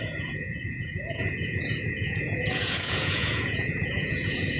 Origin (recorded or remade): remade